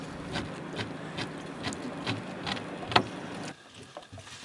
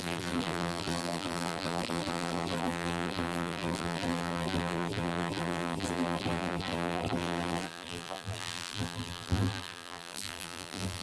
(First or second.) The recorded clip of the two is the first